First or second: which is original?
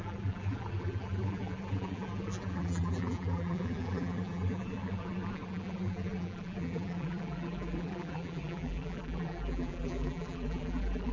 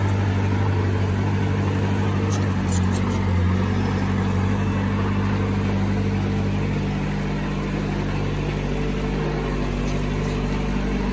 second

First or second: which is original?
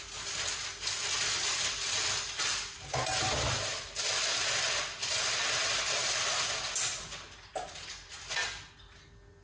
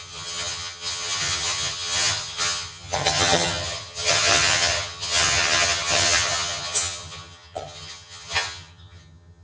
first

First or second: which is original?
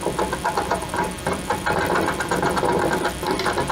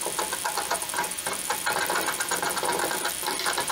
first